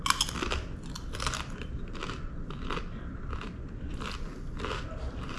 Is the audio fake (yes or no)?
no